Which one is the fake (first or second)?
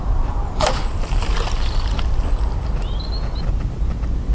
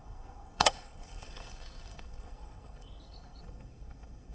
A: second